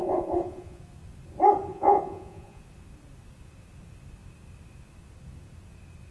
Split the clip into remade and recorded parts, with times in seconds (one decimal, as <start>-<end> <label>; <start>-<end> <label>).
0.0-0.8 remade; 0.8-1.7 recorded; 1.7-2.6 remade; 2.6-6.1 recorded